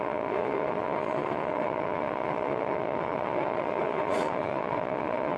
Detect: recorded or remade remade